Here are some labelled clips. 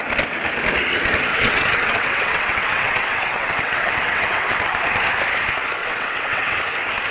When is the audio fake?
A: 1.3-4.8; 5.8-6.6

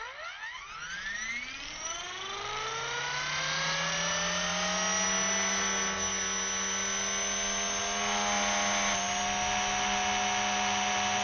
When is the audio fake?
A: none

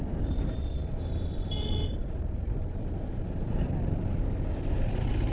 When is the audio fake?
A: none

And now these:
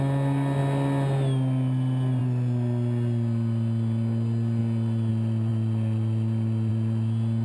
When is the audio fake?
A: none

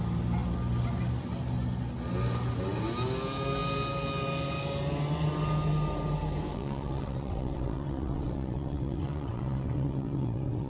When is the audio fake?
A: 6.5-10.7